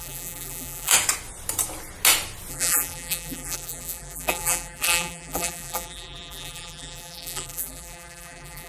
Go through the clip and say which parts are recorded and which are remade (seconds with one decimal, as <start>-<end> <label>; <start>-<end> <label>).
0.0-0.9 remade; 0.9-2.5 recorded; 2.5-8.7 remade